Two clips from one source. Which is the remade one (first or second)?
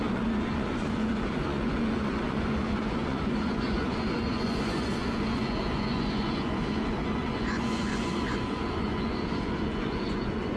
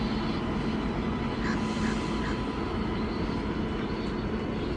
first